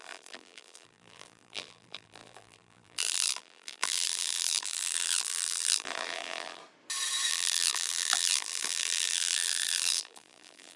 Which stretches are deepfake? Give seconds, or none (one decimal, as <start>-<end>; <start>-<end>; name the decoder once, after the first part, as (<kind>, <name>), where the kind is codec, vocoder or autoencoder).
0.0-6.6 (vocoder, BigVGAN v2); 7.3-10.8